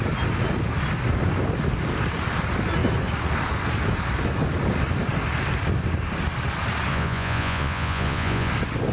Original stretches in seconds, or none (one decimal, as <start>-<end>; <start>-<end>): 0.0-6.9; 8.5-8.9